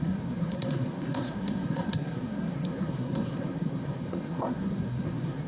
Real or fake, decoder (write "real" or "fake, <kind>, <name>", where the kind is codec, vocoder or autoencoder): fake, codec, SNAC